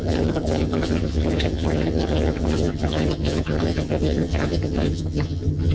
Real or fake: fake